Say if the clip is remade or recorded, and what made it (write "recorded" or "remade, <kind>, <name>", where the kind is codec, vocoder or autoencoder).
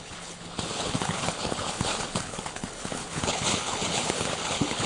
remade, codec, HILCodec